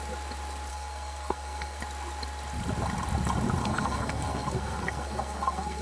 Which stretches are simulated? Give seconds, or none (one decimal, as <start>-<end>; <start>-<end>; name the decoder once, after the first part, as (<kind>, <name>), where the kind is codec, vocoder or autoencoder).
0.7-1.8 (codec, SNAC); 3.6-5.8